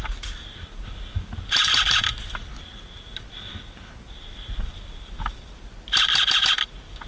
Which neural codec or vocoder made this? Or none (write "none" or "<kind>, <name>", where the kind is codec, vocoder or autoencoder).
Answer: none